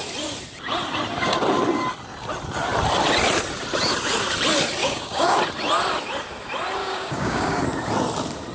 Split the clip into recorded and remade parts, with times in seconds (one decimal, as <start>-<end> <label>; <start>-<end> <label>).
0.0-4.8 recorded; 4.8-5.4 remade; 5.4-6.8 recorded; 6.8-7.6 remade; 7.6-8.5 recorded